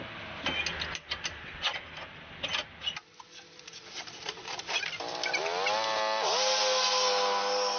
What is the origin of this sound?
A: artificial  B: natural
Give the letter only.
B